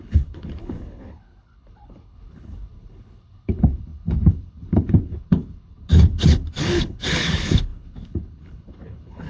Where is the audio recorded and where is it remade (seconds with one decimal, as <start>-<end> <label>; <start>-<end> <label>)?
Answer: 0.0-9.3 remade